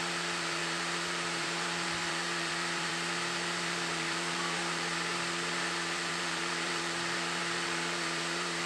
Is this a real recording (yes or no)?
no